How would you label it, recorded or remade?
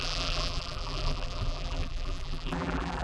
remade